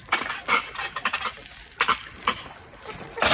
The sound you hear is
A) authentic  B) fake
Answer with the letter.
A